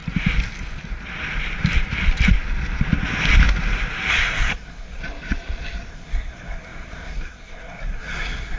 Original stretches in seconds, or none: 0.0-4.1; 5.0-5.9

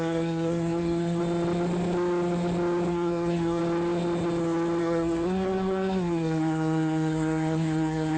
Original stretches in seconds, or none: 1.2-2.9; 3.6-4.8

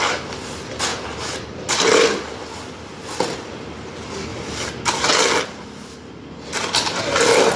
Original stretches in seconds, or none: 0.0-7.6

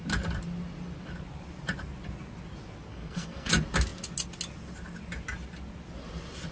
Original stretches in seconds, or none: 0.0-2.9; 3.5-6.5

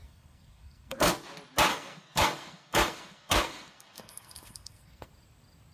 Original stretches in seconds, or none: 1.1-1.7; 5.1-5.7

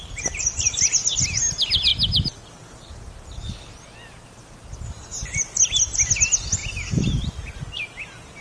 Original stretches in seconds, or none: 0.0-8.4

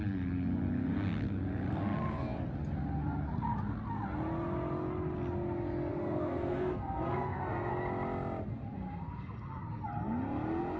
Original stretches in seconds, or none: 0.0-5.9; 7.7-10.8